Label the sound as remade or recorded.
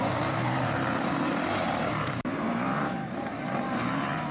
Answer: remade